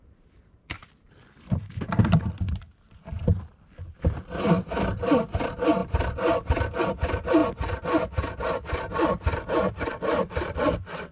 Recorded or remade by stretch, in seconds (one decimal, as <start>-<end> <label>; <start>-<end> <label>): 0.0-11.1 recorded